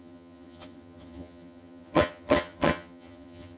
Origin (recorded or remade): remade